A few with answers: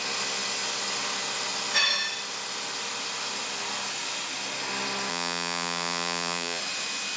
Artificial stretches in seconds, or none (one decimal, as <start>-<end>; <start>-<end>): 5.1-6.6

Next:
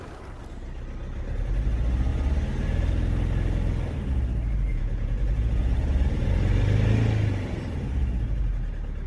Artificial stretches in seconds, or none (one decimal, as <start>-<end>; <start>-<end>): 4.7-6.3

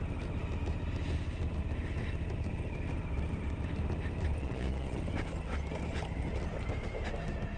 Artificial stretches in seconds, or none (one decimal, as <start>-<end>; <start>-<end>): 4.4-5.0

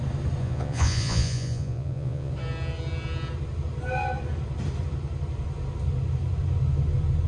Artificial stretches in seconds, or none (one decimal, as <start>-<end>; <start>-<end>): 0.4-2.3

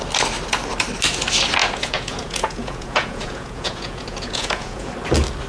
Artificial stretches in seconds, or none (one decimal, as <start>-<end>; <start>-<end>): 1.6-4.9

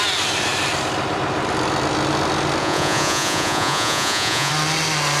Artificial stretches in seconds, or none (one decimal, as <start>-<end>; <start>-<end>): 2.6-4.5